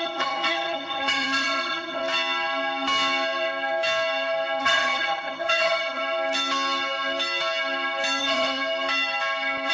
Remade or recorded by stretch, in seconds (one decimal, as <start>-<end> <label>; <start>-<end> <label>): 0.0-2.0 remade; 2.0-4.6 recorded; 4.6-6.0 remade; 6.0-8.2 recorded; 8.2-8.6 remade; 8.6-9.7 recorded